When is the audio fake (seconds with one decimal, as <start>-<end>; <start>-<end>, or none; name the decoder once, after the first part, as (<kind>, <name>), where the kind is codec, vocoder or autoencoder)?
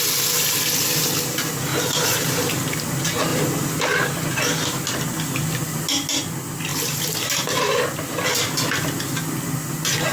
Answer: 1.7-2.4 (vocoder, BigVGAN v2); 3.3-3.9; 6.7-7.7